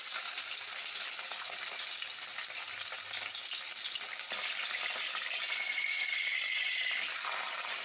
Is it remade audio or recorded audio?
recorded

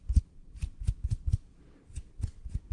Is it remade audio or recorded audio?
recorded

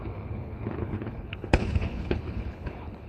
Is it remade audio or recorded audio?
remade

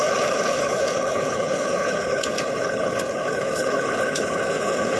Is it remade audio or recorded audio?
remade